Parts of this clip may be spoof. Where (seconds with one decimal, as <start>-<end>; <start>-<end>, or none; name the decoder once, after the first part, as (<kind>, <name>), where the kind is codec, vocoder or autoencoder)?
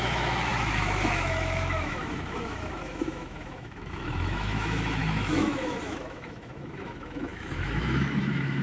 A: 0.0-8.6 (autoencoder, DAC-VAE)